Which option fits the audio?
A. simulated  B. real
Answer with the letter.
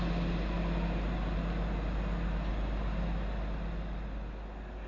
B